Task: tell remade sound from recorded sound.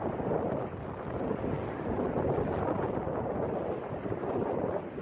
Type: recorded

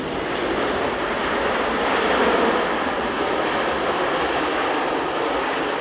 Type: recorded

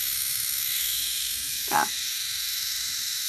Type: remade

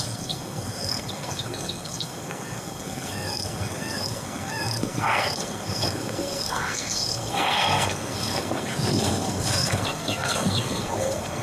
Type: remade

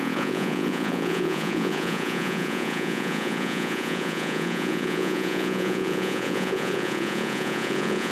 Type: remade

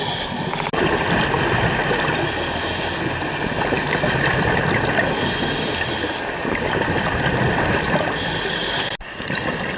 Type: recorded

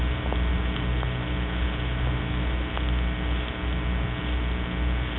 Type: recorded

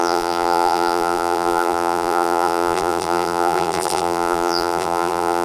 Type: remade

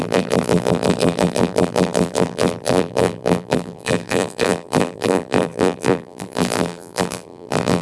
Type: remade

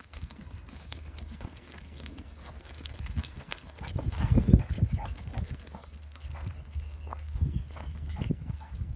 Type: remade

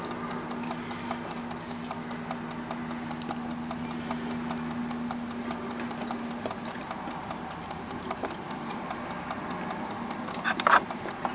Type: recorded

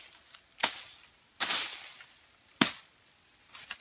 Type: recorded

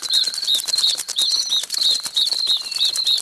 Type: recorded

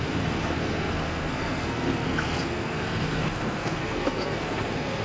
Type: remade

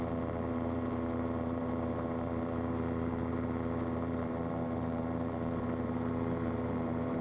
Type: remade